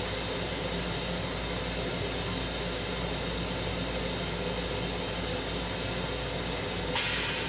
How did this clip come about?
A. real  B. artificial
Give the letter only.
A